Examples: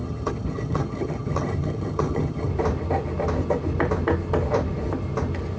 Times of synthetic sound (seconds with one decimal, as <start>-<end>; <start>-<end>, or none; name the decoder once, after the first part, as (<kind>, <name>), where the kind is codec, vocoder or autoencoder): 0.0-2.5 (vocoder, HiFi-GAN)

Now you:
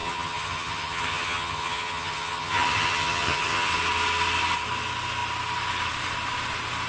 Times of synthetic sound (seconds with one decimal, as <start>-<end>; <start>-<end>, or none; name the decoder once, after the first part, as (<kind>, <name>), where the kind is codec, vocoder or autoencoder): 0.0-3.7 (vocoder, HiFi-GAN)

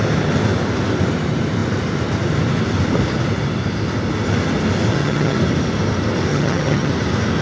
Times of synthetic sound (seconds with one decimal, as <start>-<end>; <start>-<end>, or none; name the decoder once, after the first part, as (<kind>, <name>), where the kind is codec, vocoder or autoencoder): 4.9-5.4 (vocoder, HiFi-GAN); 6.3-6.9

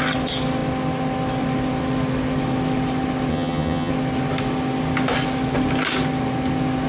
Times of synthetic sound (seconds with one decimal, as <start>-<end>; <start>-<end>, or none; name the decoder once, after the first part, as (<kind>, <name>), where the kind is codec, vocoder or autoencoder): 3.3-3.9 (vocoder, HiFi-GAN)

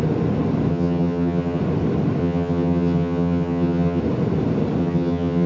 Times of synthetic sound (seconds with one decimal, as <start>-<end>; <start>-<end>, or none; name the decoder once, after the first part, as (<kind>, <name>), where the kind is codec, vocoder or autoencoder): 0.7-1.6 (vocoder, HiFi-GAN); 2.2-4.0; 4.8-5.5

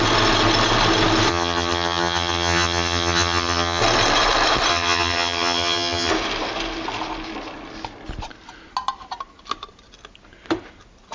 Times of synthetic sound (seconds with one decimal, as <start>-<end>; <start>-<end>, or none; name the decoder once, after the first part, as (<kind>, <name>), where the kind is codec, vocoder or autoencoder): 1.3-3.8 (vocoder, HiFi-GAN); 4.7-6.1

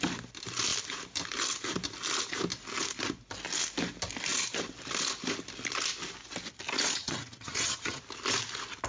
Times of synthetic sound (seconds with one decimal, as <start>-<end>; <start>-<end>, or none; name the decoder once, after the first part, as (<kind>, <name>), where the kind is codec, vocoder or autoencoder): 7.0-8.0 (vocoder, HiFi-GAN)

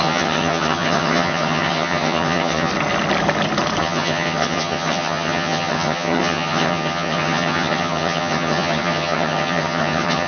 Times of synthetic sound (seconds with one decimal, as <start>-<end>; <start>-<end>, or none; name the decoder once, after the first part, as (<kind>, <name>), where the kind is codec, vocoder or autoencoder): 0.0-2.7 (vocoder, HiFi-GAN); 3.8-10.3